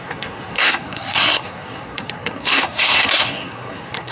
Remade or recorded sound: remade